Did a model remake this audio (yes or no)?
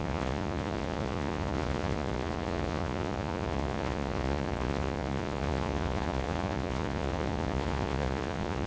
yes